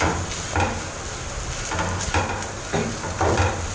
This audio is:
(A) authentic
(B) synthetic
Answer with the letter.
A